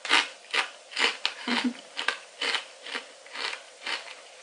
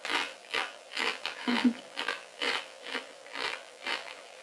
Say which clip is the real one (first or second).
first